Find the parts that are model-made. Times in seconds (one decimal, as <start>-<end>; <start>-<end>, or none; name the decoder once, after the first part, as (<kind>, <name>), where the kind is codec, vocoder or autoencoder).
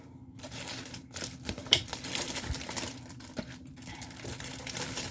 0.0-5.1 (vocoder, BigVGAN v2)